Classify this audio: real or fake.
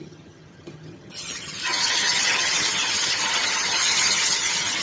fake